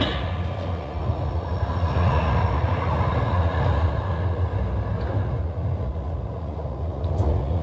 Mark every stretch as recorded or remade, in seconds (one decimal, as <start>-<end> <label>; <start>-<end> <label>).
0.0-4.5 remade; 4.5-5.2 recorded; 5.2-7.6 remade